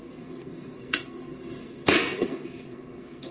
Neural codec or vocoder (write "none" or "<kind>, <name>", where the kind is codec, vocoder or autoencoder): codec, SNAC